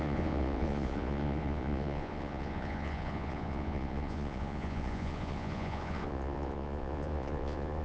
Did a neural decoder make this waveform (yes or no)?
yes